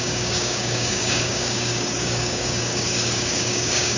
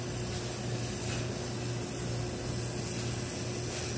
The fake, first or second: first